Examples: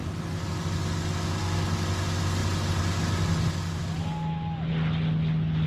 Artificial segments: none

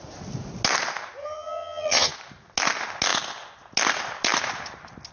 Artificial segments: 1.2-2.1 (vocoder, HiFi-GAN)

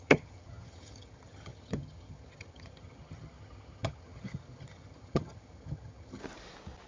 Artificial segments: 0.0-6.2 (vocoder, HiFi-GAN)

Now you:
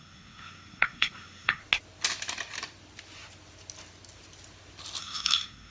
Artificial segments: 0.0-1.6 (codec, SNAC); 5.0-5.7

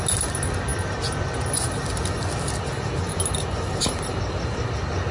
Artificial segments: none

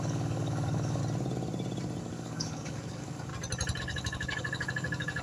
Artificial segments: 0.0-1.0 (codec, DAC); 2.0-3.3; 3.8-5.2